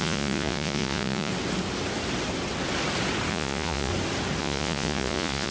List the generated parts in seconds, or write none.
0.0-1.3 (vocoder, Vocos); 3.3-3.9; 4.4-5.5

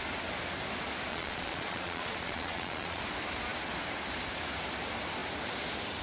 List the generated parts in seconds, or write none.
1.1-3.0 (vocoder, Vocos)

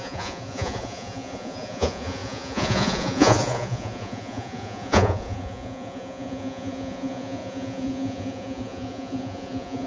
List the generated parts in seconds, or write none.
0.0-9.9 (vocoder, Vocos)

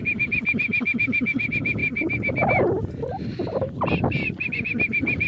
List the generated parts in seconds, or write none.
none

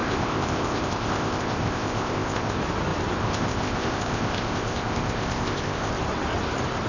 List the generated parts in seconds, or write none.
0.0-2.6 (codec, ZipCodec); 3.2-5.9